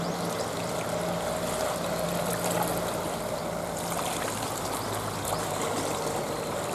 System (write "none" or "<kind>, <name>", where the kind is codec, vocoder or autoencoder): none